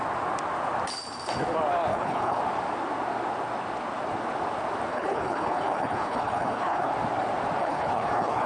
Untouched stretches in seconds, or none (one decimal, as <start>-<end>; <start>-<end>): 0.0-1.9; 2.4-4.9; 6.9-7.6

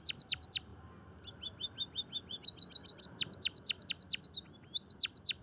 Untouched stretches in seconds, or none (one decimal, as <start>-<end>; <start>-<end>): 0.0-5.4

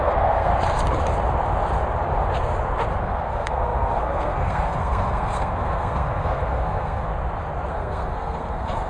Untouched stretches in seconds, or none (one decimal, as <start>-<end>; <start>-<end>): 0.5-3.0; 7.1-7.7